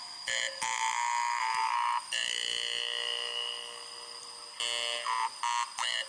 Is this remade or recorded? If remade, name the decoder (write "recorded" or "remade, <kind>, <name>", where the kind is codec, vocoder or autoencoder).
recorded